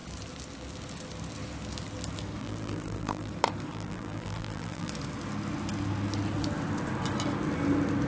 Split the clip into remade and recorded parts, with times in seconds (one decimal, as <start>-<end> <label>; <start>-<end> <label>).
0.0-2.4 recorded; 2.4-3.3 remade; 3.3-3.7 recorded; 3.7-4.9 remade; 4.9-8.1 recorded